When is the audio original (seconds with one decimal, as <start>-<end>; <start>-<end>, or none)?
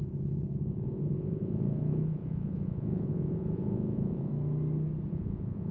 4.3-5.1